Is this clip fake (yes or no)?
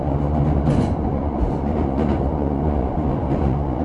yes